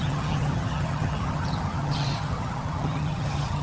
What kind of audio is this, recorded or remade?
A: remade